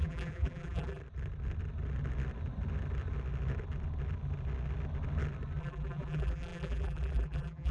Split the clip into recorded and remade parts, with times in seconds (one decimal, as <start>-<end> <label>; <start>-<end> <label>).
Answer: 0.0-1.0 remade; 1.0-5.6 recorded; 5.6-7.7 remade